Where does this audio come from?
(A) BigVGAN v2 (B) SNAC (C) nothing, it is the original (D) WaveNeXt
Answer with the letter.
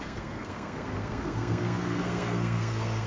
B